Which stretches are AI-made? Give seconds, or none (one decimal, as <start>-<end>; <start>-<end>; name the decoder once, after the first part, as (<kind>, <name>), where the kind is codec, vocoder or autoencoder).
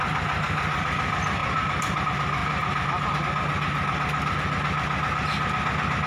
1.4-2.0 (vocoder, BigVGAN v2); 2.4-3.2